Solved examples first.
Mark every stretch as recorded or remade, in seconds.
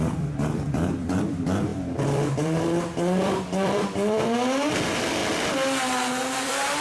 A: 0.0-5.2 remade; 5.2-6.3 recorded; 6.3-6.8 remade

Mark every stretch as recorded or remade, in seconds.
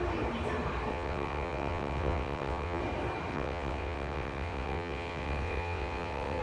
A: 0.0-0.9 recorded; 0.9-2.8 remade; 2.8-3.3 recorded; 3.3-6.4 remade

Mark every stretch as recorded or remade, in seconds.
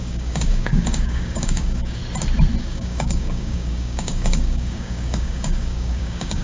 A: 0.0-2.0 remade; 2.0-2.6 recorded; 2.6-6.4 remade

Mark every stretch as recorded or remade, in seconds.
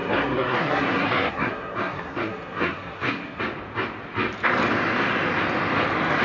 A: 0.0-3.4 remade; 3.4-6.2 recorded